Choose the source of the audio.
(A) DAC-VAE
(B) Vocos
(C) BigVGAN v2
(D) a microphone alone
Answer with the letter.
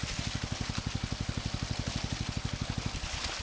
D